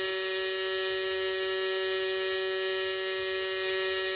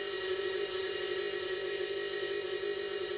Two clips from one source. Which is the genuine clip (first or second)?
first